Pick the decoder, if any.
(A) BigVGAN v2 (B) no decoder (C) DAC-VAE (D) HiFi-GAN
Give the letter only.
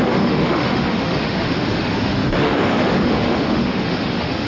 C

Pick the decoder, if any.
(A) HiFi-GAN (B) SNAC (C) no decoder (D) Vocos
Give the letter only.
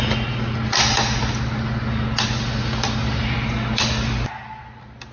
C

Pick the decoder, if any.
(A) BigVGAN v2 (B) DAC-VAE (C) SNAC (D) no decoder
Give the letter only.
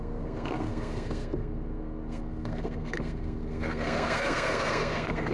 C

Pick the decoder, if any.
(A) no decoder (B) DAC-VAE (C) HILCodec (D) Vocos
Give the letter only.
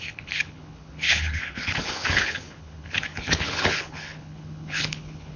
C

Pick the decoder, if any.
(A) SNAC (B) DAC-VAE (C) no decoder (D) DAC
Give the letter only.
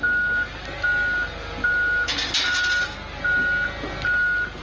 C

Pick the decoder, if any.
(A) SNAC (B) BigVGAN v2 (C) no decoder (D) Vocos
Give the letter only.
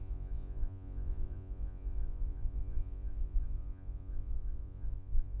D